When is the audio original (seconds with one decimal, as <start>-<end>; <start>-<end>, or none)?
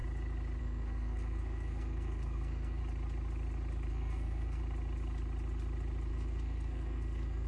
0.0-0.6; 2.8-3.9; 4.6-6.1